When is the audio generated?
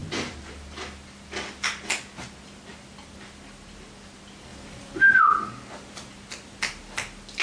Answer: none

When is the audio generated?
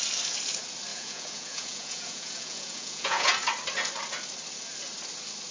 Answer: 0.9-3.3 (vocoder, Vocos)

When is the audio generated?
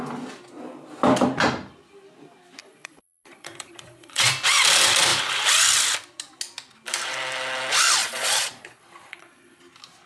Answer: 2.6-4.3 (vocoder, Vocos); 8.0-9.6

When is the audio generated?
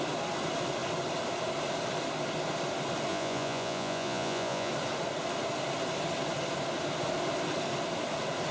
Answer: 3.1-4.7 (vocoder, Vocos)